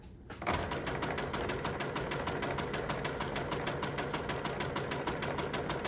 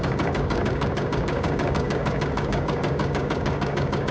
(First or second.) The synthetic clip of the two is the second